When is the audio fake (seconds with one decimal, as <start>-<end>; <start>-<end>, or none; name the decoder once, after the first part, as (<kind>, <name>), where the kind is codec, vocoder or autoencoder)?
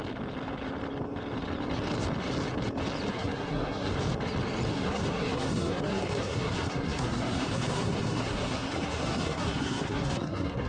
3.1-3.9 (codec, SNAC); 4.7-10.7